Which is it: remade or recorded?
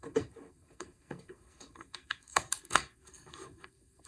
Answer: remade